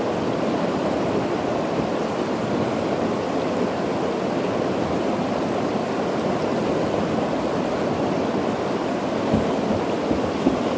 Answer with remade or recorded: recorded